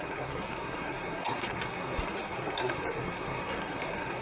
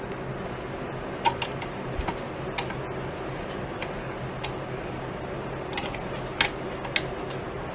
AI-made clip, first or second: first